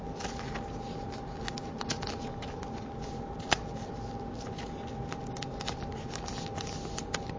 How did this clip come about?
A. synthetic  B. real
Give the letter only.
B